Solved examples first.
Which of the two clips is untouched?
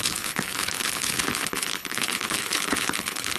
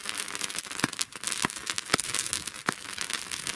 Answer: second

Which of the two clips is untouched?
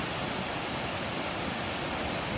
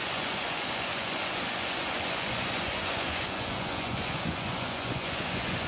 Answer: first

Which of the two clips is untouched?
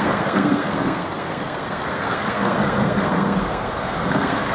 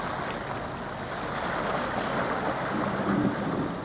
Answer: second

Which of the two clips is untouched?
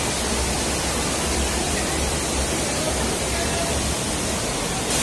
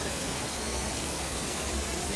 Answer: first